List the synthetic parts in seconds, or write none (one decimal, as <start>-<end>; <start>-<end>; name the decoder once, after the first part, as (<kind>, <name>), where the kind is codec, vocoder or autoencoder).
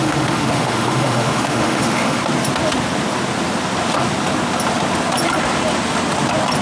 0.0-2.2 (autoencoder, DAC-VAE)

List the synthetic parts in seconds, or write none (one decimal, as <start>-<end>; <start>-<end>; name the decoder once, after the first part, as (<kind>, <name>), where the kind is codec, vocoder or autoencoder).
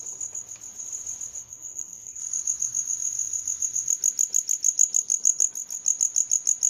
1.4-2.2 (codec, SNAC)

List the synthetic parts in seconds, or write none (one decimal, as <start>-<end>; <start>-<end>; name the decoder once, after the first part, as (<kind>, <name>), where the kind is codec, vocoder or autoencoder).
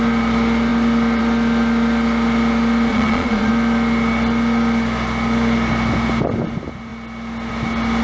2.9-3.5 (vocoder, Vocos)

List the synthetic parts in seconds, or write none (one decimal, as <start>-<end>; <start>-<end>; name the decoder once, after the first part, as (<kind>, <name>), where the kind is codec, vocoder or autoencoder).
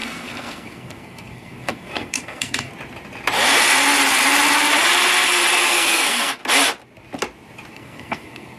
0.0-2.7 (codec, SNAC); 5.6-6.4; 7.7-8.6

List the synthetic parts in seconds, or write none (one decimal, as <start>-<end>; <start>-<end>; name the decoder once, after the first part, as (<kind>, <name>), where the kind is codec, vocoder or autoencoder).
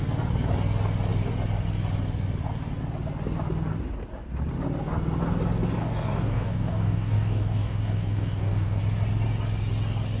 5.8-8.8 (codec, DAC)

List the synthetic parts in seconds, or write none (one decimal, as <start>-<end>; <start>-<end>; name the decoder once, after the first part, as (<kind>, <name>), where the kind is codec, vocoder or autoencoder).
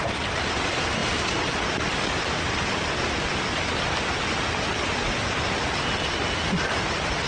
none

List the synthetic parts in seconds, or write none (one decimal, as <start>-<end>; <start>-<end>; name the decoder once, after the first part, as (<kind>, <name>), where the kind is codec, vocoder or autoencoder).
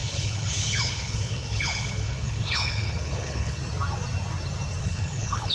0.0-3.6 (codec, HILCodec); 4.8-5.5